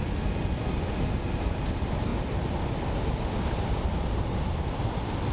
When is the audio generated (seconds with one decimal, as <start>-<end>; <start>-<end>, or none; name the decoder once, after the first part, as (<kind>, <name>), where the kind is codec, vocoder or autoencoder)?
none